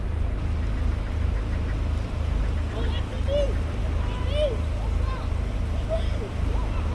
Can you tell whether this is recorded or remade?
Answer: recorded